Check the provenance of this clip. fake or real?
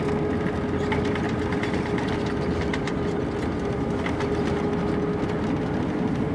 real